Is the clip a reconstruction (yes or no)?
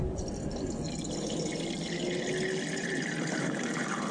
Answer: no